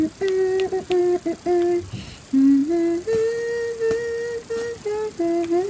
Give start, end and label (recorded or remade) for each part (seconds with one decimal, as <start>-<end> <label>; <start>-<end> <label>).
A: 0.0-5.7 recorded